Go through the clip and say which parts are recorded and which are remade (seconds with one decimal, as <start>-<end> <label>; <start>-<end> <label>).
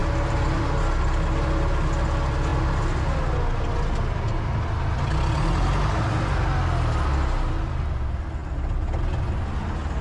0.0-10.0 recorded